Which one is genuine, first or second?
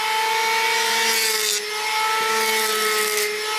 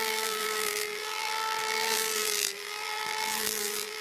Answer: first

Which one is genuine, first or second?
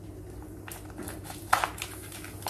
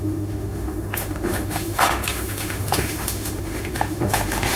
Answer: first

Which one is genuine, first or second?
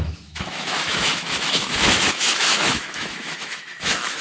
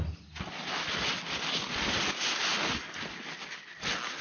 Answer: second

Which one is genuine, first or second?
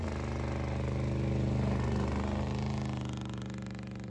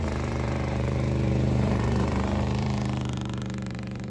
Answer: first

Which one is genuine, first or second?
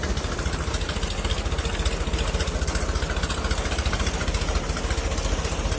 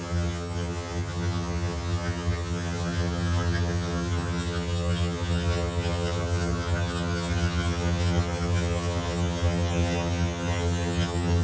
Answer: first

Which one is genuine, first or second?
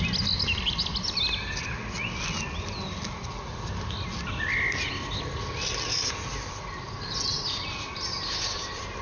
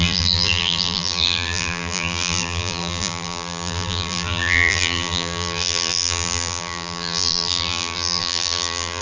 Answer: first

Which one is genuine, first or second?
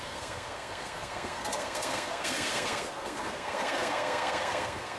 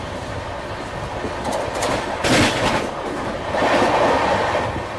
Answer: second